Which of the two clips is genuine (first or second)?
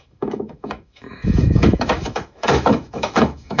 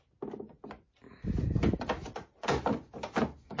second